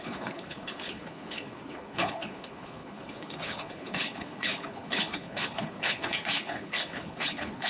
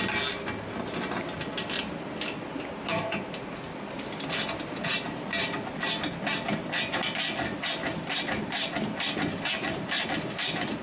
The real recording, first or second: second